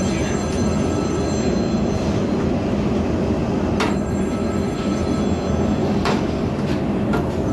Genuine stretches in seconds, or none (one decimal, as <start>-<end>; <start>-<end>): 0.0-5.8; 6.5-7.5

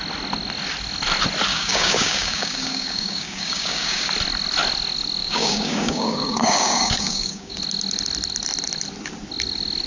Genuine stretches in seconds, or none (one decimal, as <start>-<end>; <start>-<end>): 0.0-1.5; 4.1-5.2; 7.6-9.9

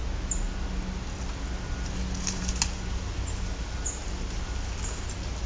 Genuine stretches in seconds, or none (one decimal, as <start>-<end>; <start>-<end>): 0.0-5.5

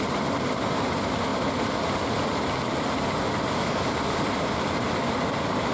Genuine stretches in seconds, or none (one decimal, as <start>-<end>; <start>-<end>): 0.0-5.7

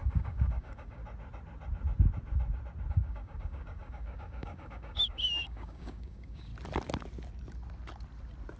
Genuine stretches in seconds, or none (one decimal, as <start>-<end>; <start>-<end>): 1.0-2.9; 6.5-8.6

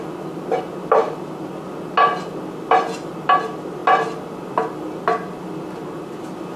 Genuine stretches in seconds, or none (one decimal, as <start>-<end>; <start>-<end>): 0.0-6.6

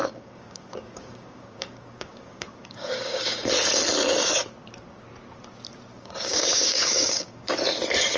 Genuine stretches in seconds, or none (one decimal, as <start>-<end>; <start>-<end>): 3.5-5.9; 7.5-8.2

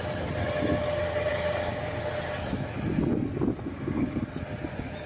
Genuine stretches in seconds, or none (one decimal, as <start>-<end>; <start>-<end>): 0.0-1.3; 2.1-3.7; 4.2-5.1